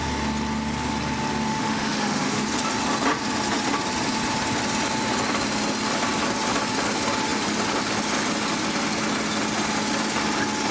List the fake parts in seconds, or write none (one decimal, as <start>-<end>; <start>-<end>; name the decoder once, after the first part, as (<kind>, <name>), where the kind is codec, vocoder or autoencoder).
1.5-2.4 (autoencoder, DAC-VAE)